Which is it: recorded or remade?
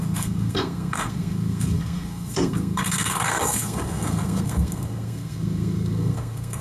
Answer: remade